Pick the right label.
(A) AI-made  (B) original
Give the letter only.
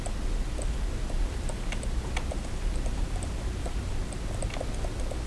B